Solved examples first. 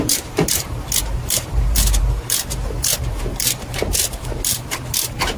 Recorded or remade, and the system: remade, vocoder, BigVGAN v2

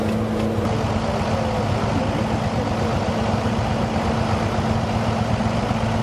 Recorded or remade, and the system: recorded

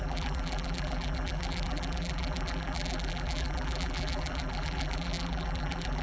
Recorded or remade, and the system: remade, vocoder, BigVGAN v2